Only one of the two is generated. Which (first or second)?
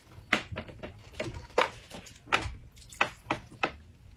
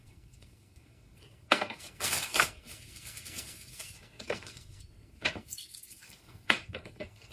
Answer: second